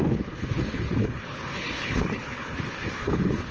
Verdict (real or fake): fake